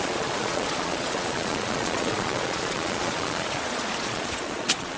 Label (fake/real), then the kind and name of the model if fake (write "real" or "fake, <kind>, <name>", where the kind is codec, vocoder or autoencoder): fake, vocoder, Vocos